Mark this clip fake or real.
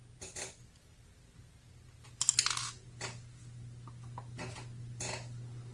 real